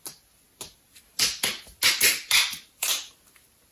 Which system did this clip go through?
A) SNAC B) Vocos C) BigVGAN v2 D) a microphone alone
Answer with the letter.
D